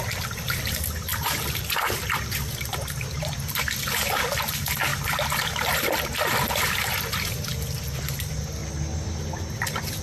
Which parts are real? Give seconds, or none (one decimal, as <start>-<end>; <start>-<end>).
0.0-10.0